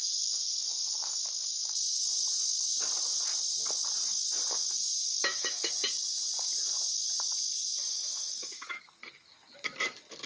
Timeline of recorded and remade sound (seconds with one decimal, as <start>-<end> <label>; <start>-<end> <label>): 0.0-1.2 remade; 1.2-4.6 recorded; 4.6-5.7 remade; 5.7-7.6 recorded; 7.6-8.8 remade; 8.8-10.3 recorded